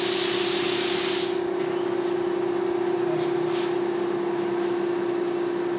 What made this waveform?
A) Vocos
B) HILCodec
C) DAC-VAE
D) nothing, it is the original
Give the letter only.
D